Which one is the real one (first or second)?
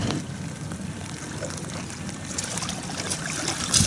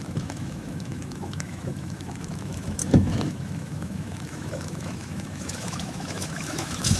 first